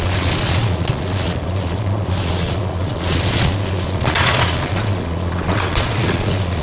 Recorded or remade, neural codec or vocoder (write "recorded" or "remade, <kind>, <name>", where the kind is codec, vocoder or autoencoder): remade, vocoder, Vocos